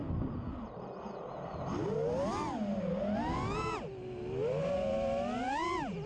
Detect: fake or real real